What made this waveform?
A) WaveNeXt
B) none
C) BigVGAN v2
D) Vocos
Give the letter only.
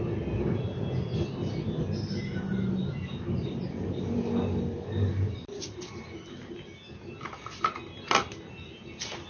B